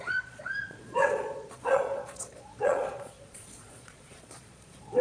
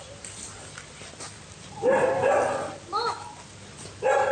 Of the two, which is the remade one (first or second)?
first